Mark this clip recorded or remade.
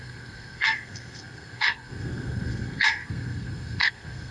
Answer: remade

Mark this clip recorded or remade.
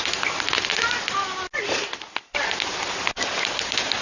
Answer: recorded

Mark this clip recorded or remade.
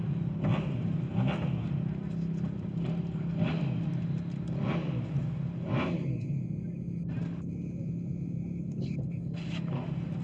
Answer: recorded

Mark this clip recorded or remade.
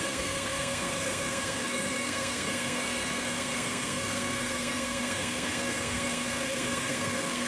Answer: remade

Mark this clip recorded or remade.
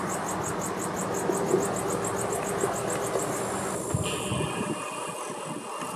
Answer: recorded